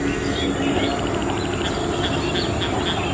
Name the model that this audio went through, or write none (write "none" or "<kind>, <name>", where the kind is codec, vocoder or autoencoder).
none